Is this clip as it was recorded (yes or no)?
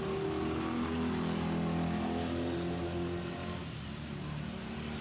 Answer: yes